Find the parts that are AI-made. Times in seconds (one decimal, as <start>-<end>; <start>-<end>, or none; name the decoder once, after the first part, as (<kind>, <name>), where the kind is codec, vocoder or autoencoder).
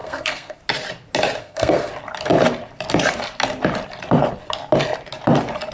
0.0-0.6 (codec, SNAC); 1.4-1.9